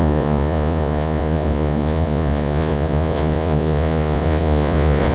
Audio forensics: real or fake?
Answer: fake